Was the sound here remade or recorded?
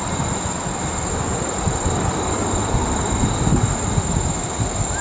recorded